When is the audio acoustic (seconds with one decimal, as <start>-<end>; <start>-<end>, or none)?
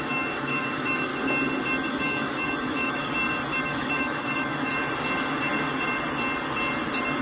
1.1-1.9; 3.0-3.5; 4.7-7.2